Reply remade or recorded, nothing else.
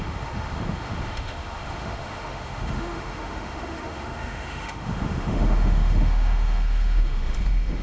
remade